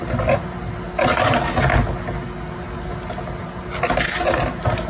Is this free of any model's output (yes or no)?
yes